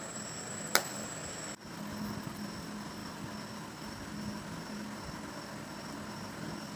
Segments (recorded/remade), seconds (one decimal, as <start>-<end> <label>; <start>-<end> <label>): 0.0-1.2 remade; 1.2-1.8 recorded; 1.8-6.8 remade